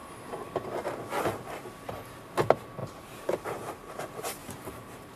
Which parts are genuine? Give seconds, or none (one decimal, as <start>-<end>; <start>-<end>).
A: 0.0-2.8; 3.7-4.4